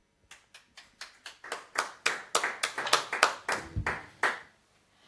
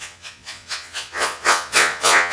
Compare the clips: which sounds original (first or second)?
first